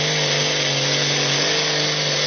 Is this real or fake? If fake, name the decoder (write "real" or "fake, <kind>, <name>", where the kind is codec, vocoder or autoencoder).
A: real